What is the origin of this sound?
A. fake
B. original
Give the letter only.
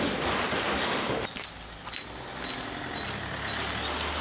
B